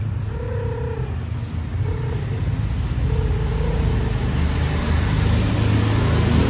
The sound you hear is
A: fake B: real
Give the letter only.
B